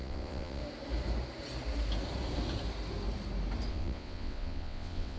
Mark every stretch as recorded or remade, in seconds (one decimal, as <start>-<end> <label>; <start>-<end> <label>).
0.0-0.6 remade; 0.6-3.7 recorded; 3.7-5.2 remade